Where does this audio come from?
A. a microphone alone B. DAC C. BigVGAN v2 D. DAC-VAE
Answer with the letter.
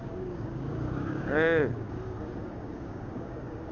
B